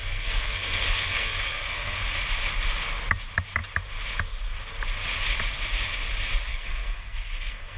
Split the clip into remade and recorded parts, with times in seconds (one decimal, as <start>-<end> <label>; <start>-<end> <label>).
0.0-2.0 remade; 2.0-6.5 recorded; 6.5-7.8 remade